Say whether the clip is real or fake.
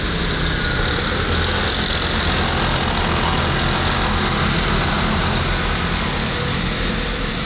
real